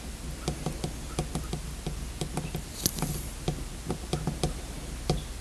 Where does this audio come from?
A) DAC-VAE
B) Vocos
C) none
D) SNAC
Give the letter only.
C